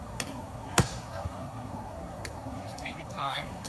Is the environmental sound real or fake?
fake